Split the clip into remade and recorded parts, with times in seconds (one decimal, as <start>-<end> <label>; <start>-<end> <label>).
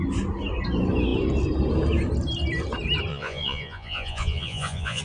0.0-3.1 recorded; 3.1-5.0 remade